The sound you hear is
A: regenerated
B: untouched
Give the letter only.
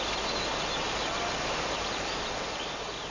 B